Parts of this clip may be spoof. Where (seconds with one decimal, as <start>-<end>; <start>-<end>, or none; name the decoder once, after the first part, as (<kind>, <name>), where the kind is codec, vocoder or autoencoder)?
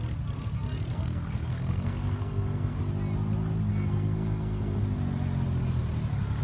0.9-2.8 (codec, SNAC); 3.7-4.8